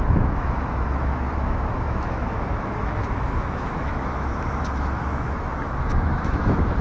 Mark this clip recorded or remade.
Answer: remade